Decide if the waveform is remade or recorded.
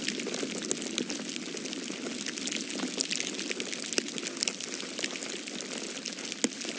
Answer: recorded